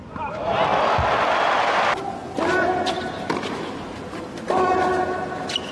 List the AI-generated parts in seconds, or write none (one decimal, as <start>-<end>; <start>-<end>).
none